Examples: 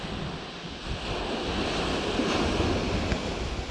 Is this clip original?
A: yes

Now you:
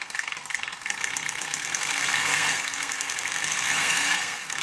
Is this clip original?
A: no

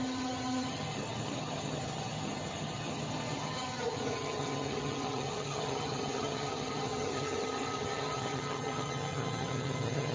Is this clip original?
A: no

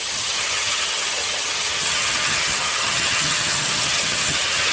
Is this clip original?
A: no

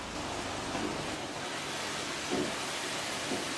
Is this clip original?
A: yes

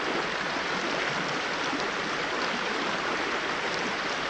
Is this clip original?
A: no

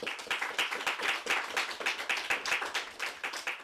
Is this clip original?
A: yes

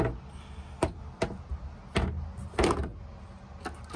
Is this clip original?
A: yes